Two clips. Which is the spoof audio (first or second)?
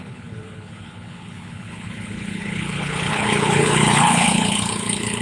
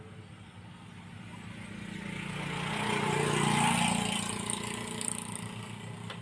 first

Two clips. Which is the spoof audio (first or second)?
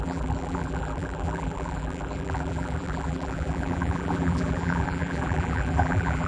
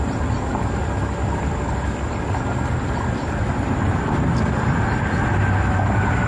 first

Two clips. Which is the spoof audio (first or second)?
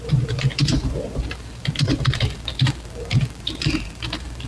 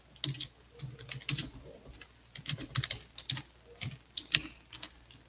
first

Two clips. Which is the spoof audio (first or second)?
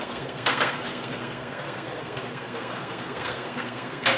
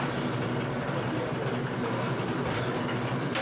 first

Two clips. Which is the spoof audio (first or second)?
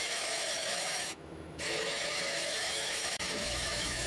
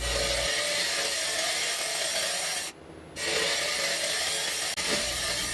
first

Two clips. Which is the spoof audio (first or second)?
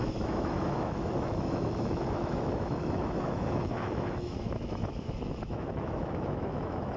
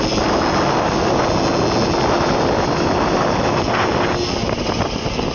first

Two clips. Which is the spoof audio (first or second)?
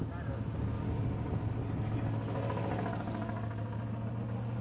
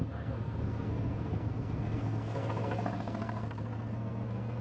second